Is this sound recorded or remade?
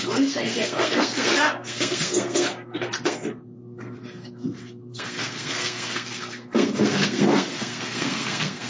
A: remade